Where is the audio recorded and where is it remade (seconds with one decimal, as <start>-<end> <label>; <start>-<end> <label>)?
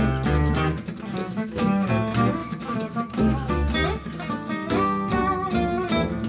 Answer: 0.0-1.2 recorded; 1.2-1.9 remade; 1.9-2.4 recorded; 2.4-3.7 remade; 3.7-6.3 recorded